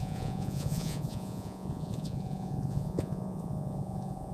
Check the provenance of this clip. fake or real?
fake